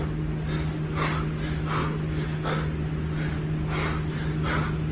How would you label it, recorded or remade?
recorded